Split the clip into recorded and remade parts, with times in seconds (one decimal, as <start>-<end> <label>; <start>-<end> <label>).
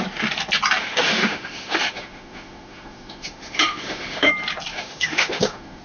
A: 0.0-0.8 recorded; 0.8-4.3 remade; 4.3-4.7 recorded; 4.7-5.8 remade